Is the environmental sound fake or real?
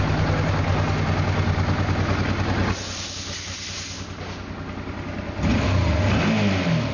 real